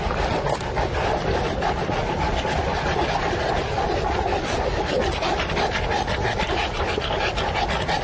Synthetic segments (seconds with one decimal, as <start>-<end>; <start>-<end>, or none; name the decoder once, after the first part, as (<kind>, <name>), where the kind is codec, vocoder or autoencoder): none